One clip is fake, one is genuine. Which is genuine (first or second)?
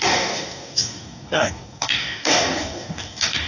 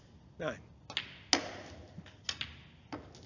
second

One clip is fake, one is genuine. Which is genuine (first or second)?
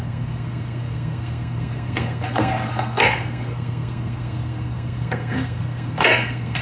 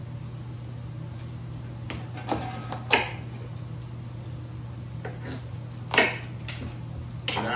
second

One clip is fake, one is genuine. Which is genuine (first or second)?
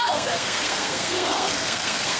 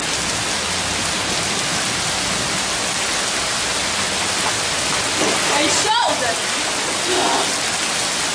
second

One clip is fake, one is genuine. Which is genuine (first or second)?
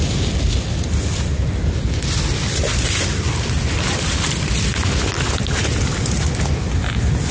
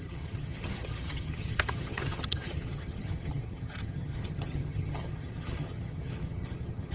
first